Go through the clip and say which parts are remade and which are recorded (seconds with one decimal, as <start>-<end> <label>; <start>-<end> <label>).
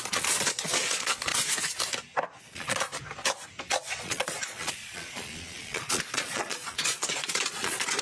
0.0-1.3 remade; 1.3-2.4 recorded; 2.4-2.9 remade; 2.9-4.0 recorded; 4.0-8.0 remade